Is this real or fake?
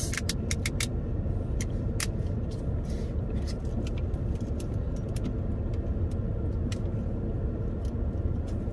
real